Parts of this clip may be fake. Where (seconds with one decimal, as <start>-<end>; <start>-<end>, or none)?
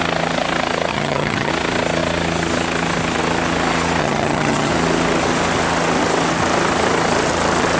0.9-1.5; 4.0-4.7